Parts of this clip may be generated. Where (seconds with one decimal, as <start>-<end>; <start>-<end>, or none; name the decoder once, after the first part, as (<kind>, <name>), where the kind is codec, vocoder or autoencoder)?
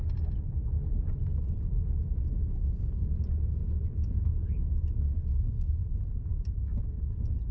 3.8-4.6 (vocoder, BigVGAN v2); 5.8-6.9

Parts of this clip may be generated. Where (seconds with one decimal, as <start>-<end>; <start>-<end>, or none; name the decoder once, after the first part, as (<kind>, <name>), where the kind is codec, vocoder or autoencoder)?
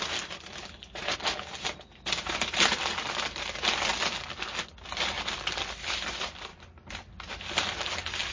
none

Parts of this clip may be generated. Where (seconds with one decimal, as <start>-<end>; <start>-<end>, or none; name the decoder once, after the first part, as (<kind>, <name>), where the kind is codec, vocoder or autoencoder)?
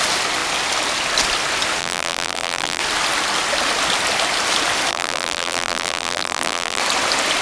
1.8-2.8 (vocoder, BigVGAN v2); 4.9-6.8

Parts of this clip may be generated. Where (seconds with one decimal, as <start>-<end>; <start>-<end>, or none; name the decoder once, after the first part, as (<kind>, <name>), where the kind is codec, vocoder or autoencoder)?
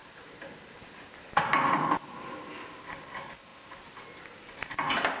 none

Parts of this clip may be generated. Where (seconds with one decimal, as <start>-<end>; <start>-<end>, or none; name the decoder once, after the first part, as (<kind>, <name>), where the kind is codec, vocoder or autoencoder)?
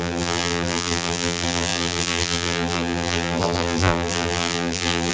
0.0-5.1 (vocoder, BigVGAN v2)